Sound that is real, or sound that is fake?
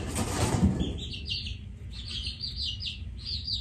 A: real